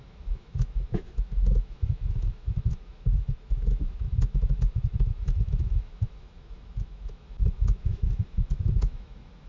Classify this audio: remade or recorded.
remade